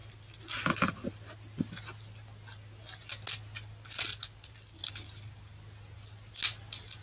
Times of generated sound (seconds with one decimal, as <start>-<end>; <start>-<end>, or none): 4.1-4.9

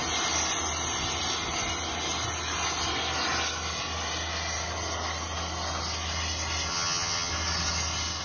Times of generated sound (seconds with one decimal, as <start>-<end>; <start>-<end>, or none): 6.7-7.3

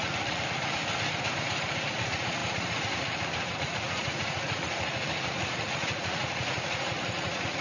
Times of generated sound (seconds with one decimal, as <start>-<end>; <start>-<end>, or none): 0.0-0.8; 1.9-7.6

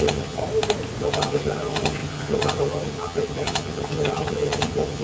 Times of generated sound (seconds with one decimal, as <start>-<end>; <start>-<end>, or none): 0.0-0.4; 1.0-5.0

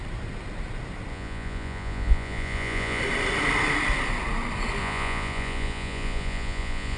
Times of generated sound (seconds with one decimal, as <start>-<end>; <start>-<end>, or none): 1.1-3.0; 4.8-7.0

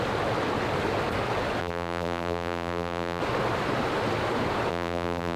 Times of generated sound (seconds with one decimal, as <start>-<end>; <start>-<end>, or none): 1.6-3.2; 4.7-5.4